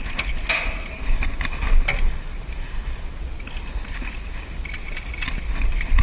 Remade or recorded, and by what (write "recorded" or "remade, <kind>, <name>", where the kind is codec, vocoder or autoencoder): recorded